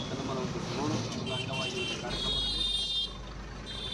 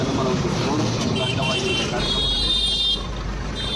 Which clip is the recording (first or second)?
first